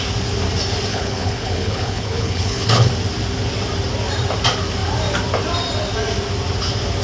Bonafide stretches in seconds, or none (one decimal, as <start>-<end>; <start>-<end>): 0.0-0.9; 2.9-7.0